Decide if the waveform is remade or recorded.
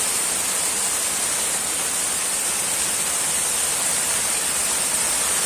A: recorded